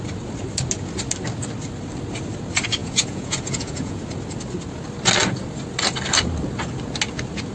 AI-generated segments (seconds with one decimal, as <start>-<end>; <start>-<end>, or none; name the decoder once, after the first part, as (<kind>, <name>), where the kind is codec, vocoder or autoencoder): 2.8-4.0 (vocoder, Vocos)